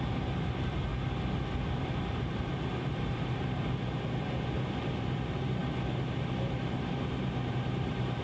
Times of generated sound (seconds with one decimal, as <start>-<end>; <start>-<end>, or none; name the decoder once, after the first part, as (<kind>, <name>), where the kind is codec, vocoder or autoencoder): 0.0-0.9 (vocoder, BigVGAN v2); 1.7-5.6; 6.6-8.2

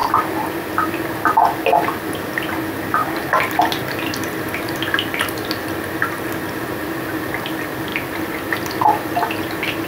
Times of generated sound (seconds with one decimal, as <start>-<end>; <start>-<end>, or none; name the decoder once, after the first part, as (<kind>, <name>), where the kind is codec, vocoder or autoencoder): 3.0-5.9 (vocoder, BigVGAN v2); 7.9-9.4

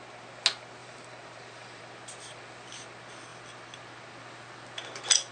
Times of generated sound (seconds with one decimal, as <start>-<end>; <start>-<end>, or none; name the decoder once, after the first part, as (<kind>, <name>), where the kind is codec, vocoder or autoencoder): 0.8-1.8 (vocoder, BigVGAN v2)

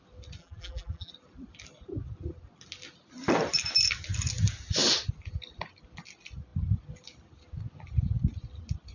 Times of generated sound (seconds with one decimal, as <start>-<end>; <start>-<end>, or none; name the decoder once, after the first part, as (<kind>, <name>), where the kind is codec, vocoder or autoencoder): 0.4-1.1 (vocoder, BigVGAN v2)